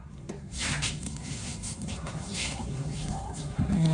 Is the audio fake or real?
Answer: fake